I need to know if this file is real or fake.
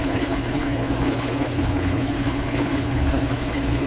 fake